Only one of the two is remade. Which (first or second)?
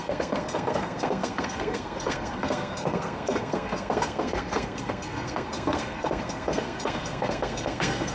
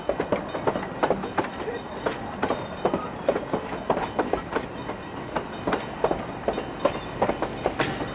first